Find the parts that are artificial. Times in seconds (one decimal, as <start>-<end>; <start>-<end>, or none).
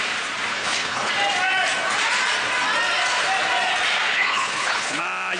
0.5-1.1; 4.1-5.0